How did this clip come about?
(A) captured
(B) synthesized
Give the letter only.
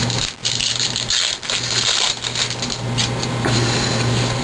A